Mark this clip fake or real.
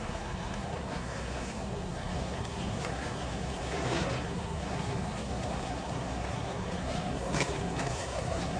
fake